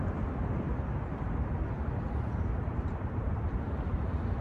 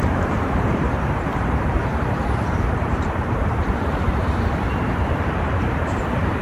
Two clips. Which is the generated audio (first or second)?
second